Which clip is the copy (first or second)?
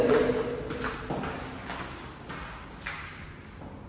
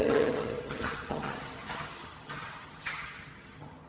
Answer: second